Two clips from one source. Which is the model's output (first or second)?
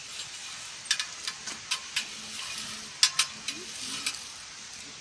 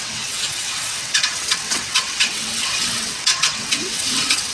second